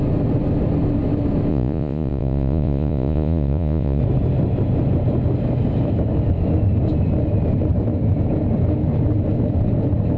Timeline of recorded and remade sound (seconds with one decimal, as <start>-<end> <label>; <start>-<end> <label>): 0.0-1.5 recorded; 1.5-4.0 remade; 4.0-10.2 recorded